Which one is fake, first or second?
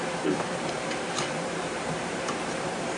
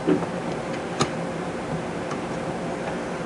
first